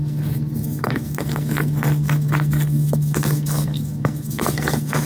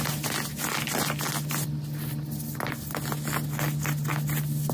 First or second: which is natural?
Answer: second